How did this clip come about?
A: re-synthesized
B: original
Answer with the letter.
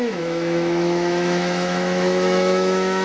A